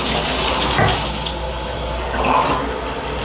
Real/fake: real